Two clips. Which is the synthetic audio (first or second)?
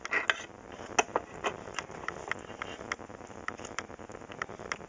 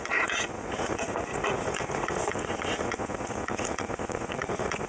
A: second